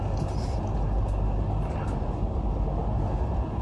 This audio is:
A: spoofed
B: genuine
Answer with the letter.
B